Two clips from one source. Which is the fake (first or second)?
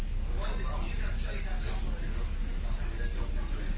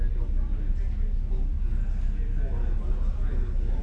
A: first